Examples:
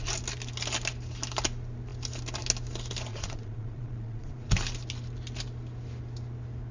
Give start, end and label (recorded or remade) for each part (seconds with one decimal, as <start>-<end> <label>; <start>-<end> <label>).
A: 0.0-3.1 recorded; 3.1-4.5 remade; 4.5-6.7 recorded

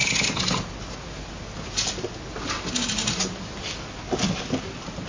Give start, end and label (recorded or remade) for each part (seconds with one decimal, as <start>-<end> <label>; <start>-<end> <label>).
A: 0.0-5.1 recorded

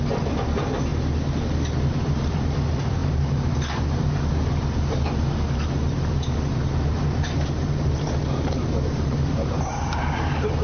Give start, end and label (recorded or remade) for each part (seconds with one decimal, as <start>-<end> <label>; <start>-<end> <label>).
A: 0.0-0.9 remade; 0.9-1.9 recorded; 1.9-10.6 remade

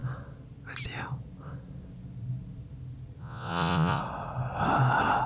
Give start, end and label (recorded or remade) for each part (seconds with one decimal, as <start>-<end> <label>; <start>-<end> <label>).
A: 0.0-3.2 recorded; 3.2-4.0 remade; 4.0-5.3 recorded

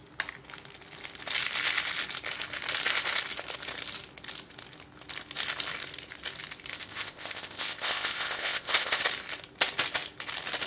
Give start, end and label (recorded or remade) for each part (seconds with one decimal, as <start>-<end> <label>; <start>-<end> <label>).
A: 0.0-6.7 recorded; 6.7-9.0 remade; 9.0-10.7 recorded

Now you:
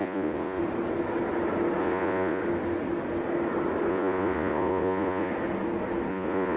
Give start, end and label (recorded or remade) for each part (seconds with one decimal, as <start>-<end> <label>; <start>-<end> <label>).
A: 0.0-0.6 remade; 0.6-1.8 recorded; 1.8-2.4 remade; 2.4-3.9 recorded; 3.9-5.3 remade; 5.3-6.1 recorded; 6.1-6.6 remade